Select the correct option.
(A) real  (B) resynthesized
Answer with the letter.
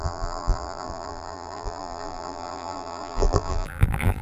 B